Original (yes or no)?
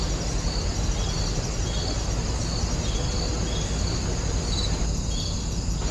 yes